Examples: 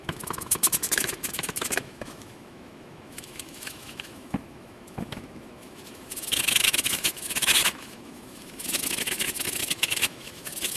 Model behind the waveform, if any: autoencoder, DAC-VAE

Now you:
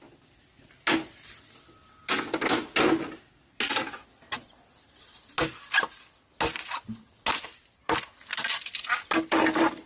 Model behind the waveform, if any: none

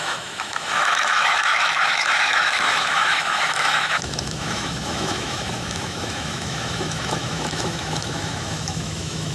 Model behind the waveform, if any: autoencoder, DAC-VAE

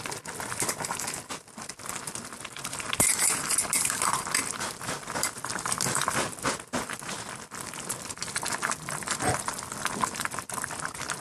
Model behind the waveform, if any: none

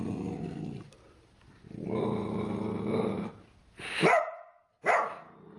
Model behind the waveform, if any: none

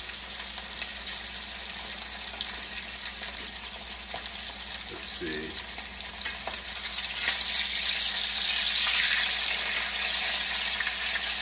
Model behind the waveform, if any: none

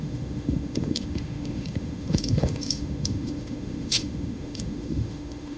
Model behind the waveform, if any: autoencoder, DAC-VAE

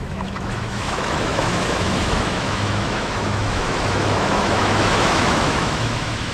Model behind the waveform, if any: autoencoder, DAC-VAE